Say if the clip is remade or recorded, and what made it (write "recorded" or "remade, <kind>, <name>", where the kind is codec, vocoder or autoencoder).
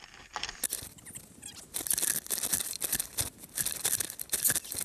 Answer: recorded